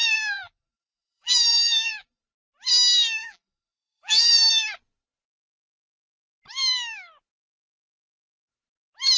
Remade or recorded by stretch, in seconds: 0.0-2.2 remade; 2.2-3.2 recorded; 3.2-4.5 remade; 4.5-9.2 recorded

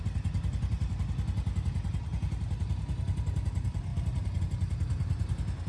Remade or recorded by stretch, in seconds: 0.0-5.7 recorded

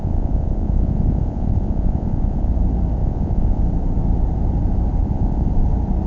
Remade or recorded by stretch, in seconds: 0.0-2.5 remade; 2.5-3.0 recorded; 3.0-3.6 remade; 3.6-5.0 recorded; 5.0-5.5 remade; 5.5-6.1 recorded

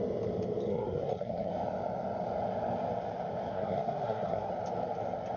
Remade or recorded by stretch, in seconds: 0.0-0.7 recorded; 0.7-1.5 remade; 1.5-3.5 recorded; 3.5-4.5 remade; 4.5-5.4 recorded

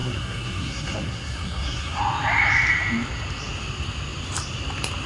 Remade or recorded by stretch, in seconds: 0.0-2.0 remade; 2.0-5.1 recorded

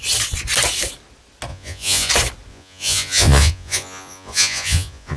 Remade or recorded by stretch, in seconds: 0.0-1.5 recorded; 1.5-2.1 remade; 2.1-2.5 recorded; 2.5-5.2 remade